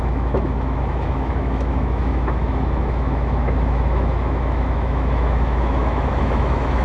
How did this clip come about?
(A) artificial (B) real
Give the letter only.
A